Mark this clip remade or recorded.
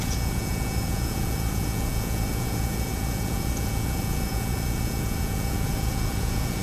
remade